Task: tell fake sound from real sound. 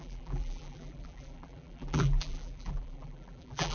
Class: fake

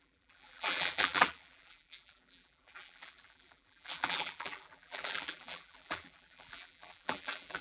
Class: fake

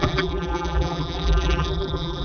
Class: fake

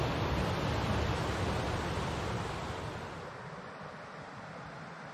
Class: real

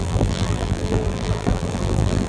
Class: fake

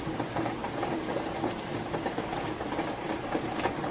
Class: fake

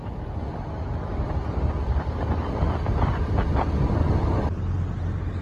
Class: real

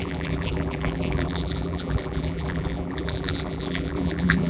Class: fake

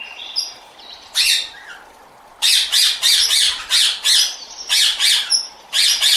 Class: fake